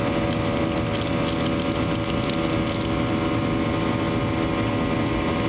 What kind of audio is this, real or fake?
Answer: real